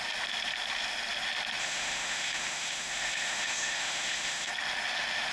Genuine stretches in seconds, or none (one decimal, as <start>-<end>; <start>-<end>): 0.0-1.6; 4.5-5.3